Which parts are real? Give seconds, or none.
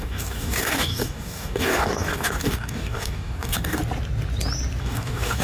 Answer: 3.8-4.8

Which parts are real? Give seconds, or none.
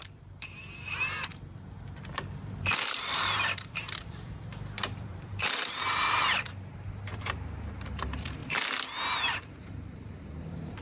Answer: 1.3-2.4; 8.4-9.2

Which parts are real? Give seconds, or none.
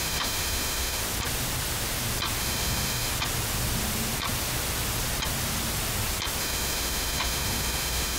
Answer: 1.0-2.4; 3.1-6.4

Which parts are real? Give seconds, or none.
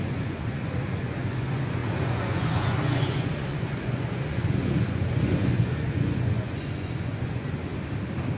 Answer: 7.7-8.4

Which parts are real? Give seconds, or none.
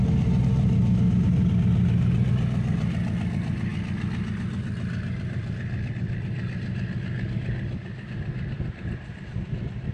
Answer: 0.0-9.9